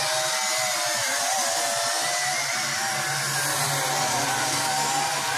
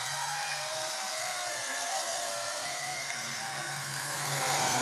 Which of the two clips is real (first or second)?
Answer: first